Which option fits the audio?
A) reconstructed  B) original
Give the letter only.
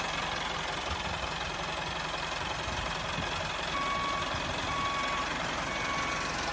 B